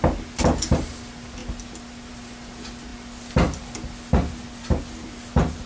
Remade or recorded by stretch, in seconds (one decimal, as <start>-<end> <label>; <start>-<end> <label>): 0.0-5.7 recorded